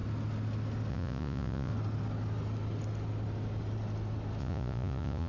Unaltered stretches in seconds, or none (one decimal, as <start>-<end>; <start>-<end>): 0.0-0.9; 1.7-4.4